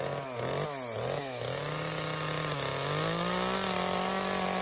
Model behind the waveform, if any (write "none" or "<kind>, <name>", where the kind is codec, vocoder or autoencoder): none